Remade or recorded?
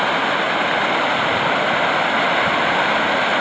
recorded